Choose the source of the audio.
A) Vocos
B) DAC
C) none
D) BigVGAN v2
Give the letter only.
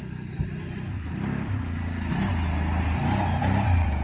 D